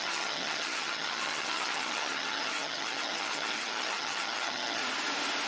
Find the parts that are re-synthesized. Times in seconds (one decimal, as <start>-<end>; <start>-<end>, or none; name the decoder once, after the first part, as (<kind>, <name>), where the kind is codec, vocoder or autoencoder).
0.0-4.8 (vocoder, HiFi-GAN)